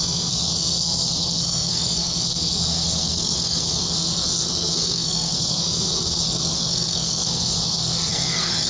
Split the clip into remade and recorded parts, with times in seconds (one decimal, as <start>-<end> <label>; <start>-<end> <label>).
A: 0.0-8.7 remade